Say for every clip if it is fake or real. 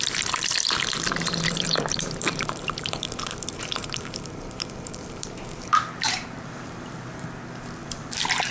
fake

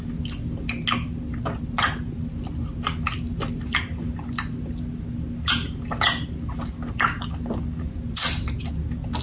real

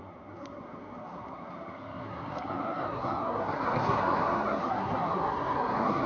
fake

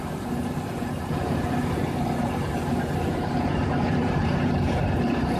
fake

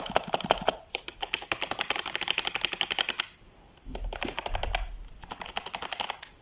real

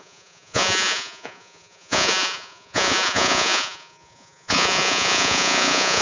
fake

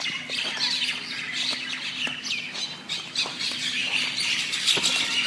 real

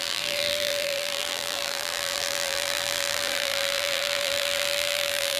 fake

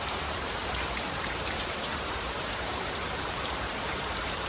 fake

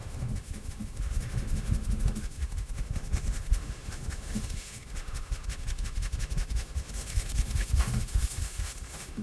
fake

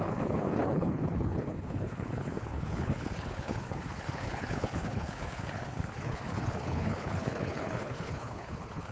fake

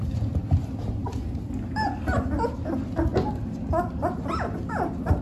real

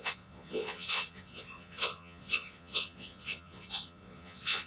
fake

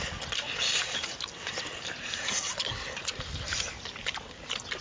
real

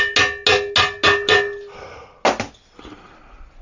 real